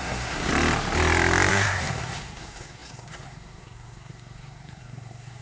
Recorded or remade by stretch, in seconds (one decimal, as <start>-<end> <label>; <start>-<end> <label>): 0.0-0.5 remade; 0.5-1.5 recorded; 1.5-5.4 remade